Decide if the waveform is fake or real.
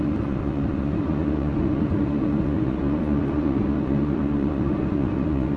fake